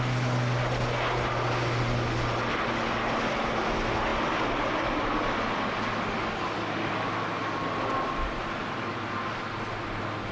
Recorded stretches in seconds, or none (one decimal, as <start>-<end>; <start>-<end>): 0.0-10.3